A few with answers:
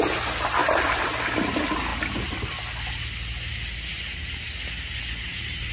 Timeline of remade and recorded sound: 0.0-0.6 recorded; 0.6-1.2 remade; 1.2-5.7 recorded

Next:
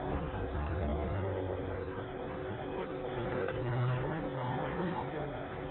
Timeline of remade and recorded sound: 0.0-5.7 remade

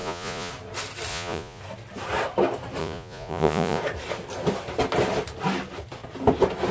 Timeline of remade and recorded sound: 0.0-0.5 remade; 0.5-1.1 recorded; 1.1-1.6 remade; 1.6-2.8 recorded; 2.8-3.8 remade; 3.8-6.7 recorded

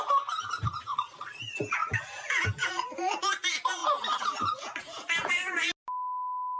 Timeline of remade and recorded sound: 0.0-0.9 recorded; 0.9-1.4 remade; 1.4-6.6 recorded

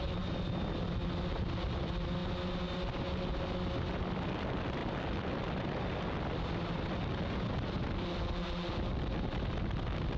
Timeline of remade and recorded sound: 0.0-4.8 recorded; 4.8-5.5 remade; 5.5-10.2 recorded

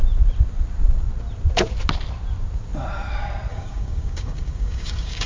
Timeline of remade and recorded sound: 0.0-3.5 recorded; 3.5-5.3 remade